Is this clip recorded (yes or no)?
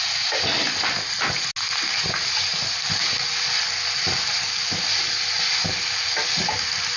yes